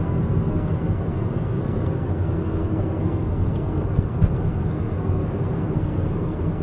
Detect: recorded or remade remade